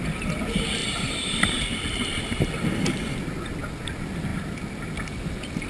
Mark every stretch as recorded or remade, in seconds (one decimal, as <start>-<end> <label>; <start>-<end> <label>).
0.0-0.8 recorded; 0.8-1.5 remade; 1.5-5.7 recorded